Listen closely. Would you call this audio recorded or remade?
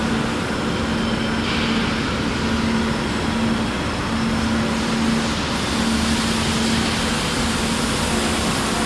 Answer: recorded